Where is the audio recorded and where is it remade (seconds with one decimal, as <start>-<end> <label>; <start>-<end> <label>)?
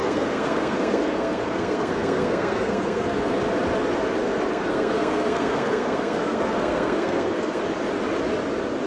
0.0-3.2 remade; 3.2-4.5 recorded; 4.5-7.6 remade; 7.6-8.9 recorded